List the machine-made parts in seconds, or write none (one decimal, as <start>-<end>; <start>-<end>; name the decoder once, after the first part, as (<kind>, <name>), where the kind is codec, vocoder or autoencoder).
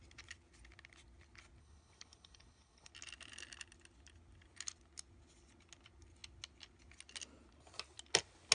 1.6-2.9 (codec, HILCodec)